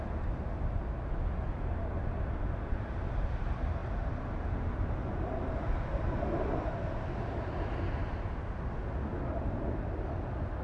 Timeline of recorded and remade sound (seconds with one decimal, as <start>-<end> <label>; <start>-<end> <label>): 0.0-10.6 recorded

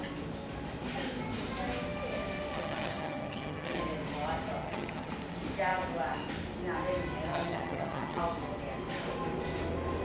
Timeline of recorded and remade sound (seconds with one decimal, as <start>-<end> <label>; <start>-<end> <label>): 0.0-2.5 recorded; 2.5-3.8 remade; 3.8-4.6 recorded; 4.6-5.1 remade; 5.1-7.3 recorded; 7.3-8.2 remade; 8.2-10.0 recorded

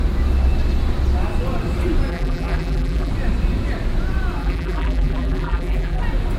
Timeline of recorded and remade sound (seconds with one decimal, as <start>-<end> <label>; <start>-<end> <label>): 0.0-2.1 recorded; 2.1-3.1 remade; 3.1-4.4 recorded; 4.4-6.0 remade; 6.0-6.4 recorded